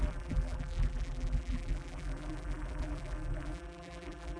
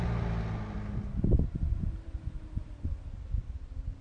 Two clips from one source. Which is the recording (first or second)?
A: second